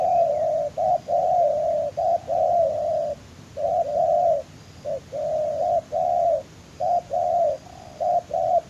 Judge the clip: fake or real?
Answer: real